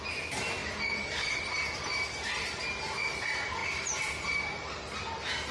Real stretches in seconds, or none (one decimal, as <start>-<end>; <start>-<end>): 0.0-5.5